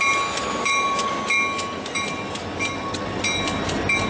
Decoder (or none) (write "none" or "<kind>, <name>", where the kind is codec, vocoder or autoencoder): none